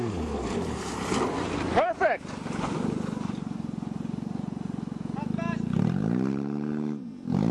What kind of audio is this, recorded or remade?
recorded